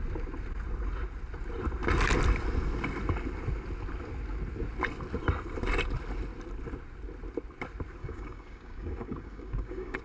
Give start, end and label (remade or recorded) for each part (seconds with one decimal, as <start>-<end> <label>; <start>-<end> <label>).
0.0-8.0 recorded; 8.0-10.0 remade

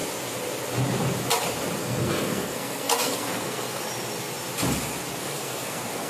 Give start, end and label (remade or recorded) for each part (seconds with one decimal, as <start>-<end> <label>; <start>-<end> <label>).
0.0-1.8 recorded; 1.8-3.8 remade; 3.8-5.2 recorded; 5.2-6.1 remade

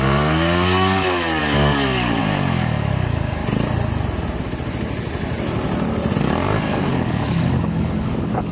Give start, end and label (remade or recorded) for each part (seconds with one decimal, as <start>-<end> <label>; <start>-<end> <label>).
0.0-3.4 remade; 3.4-6.2 recorded; 6.2-8.5 remade

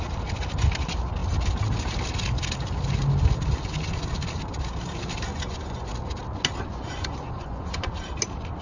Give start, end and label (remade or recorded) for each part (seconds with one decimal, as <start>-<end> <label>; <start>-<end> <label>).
0.0-5.3 recorded; 5.3-5.9 remade; 5.9-6.7 recorded; 6.7-7.9 remade; 7.9-8.6 recorded

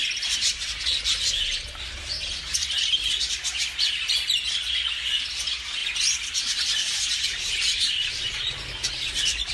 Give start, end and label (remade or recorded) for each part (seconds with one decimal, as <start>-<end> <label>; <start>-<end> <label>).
0.0-9.5 recorded

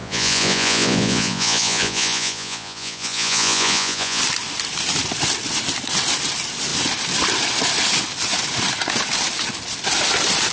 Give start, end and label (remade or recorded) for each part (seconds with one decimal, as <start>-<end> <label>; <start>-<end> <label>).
0.0-4.2 remade; 4.2-10.5 recorded